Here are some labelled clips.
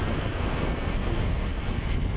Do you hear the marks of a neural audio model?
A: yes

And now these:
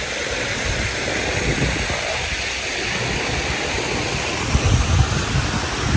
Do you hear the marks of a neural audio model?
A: no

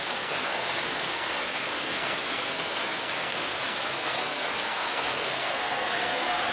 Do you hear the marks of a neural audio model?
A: yes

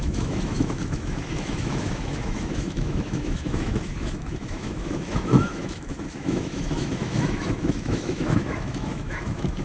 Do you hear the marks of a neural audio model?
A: yes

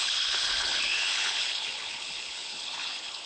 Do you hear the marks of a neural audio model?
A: yes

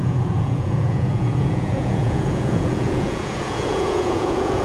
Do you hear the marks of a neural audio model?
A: yes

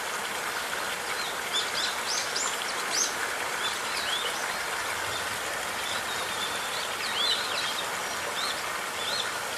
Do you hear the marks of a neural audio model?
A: no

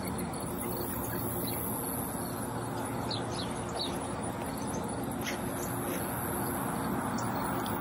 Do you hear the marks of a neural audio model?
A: no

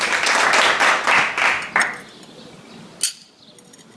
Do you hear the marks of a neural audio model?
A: no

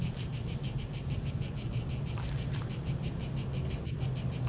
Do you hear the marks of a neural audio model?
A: no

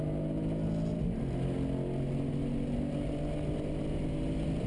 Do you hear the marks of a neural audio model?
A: no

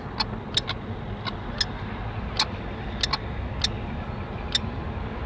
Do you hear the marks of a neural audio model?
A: no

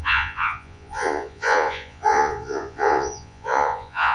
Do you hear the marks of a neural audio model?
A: yes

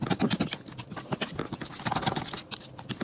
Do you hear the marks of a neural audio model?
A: no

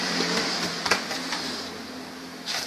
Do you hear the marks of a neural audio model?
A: yes